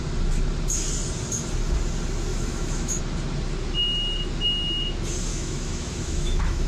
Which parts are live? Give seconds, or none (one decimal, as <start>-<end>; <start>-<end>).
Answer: 0.0-2.3; 3.0-5.3